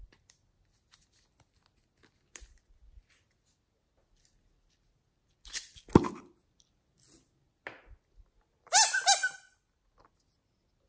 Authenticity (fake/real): real